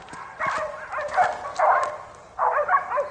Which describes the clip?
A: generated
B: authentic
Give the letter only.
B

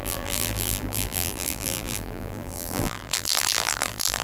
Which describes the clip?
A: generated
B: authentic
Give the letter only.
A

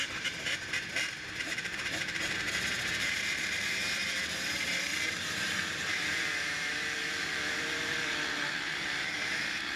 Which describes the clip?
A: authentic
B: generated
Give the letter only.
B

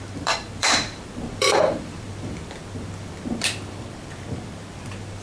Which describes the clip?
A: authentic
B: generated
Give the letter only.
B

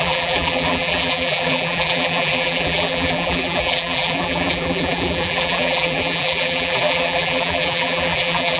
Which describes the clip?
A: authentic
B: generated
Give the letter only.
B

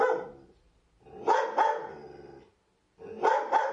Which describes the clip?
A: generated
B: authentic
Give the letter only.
B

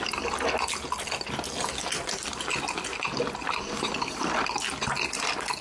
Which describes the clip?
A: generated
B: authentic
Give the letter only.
B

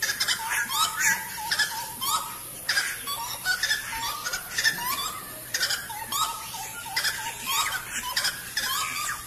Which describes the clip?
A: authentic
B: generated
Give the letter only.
A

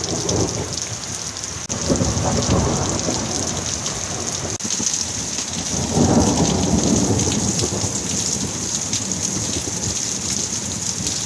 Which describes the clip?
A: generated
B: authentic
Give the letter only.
B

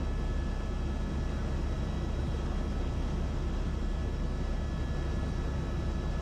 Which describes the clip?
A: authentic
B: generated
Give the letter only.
A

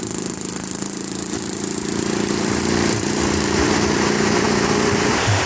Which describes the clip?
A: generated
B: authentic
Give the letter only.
A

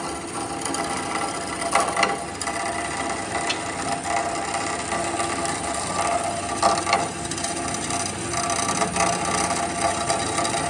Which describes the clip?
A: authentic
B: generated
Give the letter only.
A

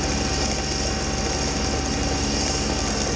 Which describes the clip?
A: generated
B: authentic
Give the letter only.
B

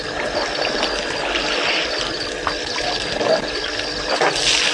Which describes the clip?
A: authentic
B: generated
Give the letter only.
A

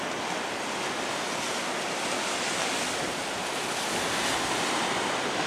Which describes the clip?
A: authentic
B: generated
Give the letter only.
A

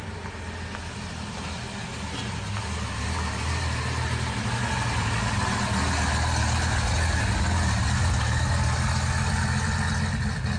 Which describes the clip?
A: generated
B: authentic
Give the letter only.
B